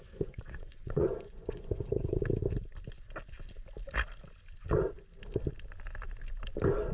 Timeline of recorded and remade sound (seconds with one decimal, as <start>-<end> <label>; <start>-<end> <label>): 0.0-2.3 remade; 2.3-6.9 recorded